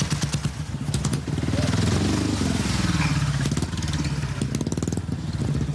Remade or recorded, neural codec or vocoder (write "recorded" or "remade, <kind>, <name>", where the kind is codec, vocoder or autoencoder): recorded